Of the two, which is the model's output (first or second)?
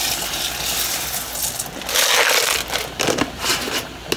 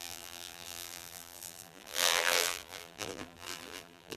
second